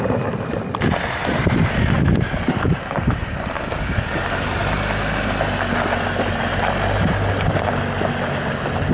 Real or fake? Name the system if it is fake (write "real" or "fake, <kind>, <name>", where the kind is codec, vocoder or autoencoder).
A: real